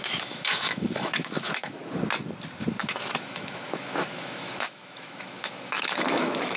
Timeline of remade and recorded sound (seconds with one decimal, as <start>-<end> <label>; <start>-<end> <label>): 0.0-1.8 remade; 1.8-2.8 recorded; 2.8-6.6 remade